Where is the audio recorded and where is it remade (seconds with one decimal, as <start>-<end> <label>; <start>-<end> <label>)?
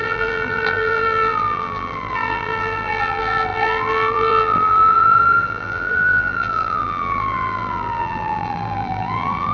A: 0.0-9.5 remade